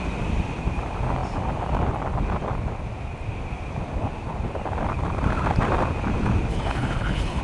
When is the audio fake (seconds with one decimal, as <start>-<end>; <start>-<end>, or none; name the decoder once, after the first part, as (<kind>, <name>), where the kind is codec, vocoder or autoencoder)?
6.5-7.4 (codec, HILCodec)